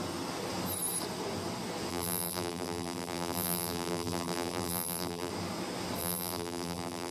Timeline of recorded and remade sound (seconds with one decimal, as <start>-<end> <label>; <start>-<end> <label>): 0.0-1.9 recorded; 1.9-5.3 remade; 5.3-6.0 recorded; 6.0-7.1 remade